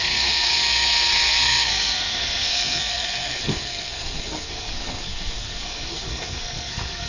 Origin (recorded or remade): remade